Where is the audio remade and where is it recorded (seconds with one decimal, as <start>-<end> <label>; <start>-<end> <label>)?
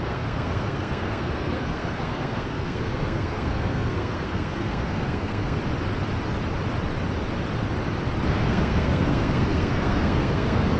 0.0-5.6 remade; 5.6-8.3 recorded; 8.3-10.8 remade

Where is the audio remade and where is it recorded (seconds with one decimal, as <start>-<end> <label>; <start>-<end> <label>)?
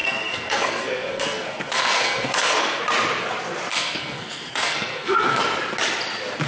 0.0-2.8 remade; 2.8-3.7 recorded; 3.7-5.4 remade; 5.4-6.5 recorded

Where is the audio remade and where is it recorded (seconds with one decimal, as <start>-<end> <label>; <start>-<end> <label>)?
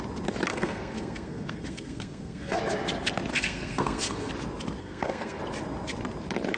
0.0-0.5 recorded; 0.5-2.6 remade; 2.6-3.3 recorded; 3.3-4.3 remade; 4.3-4.8 recorded; 4.8-5.4 remade; 5.4-6.6 recorded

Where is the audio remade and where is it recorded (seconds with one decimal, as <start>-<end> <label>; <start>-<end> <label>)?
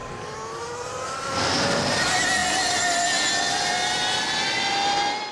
0.0-5.3 recorded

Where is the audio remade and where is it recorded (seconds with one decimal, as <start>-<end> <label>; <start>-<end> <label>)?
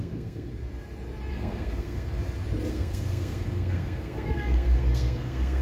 0.0-0.5 remade; 0.5-1.3 recorded; 1.3-2.1 remade; 2.1-2.7 recorded; 2.7-5.6 remade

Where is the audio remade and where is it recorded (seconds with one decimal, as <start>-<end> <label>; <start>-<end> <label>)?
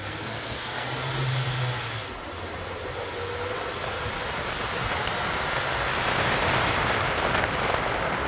0.0-0.9 remade; 0.9-8.3 recorded